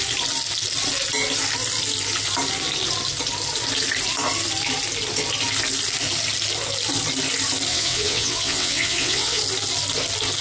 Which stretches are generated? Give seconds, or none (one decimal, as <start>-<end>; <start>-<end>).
7.7-9.4